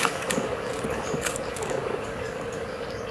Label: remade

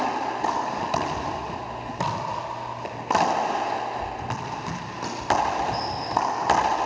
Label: recorded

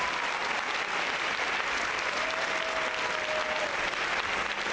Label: recorded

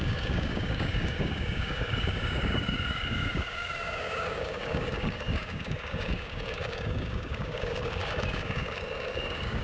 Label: remade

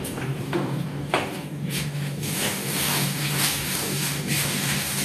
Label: remade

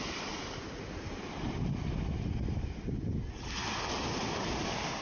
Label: recorded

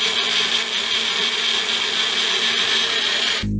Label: recorded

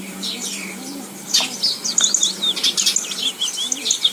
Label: recorded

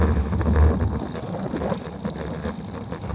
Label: recorded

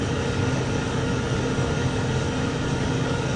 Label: remade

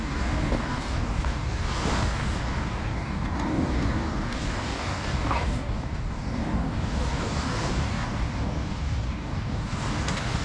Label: remade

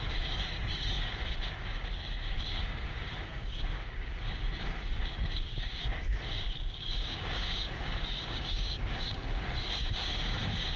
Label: remade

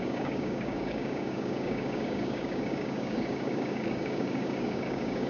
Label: remade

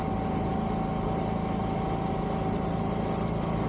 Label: recorded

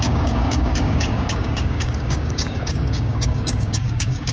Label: remade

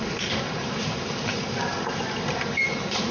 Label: recorded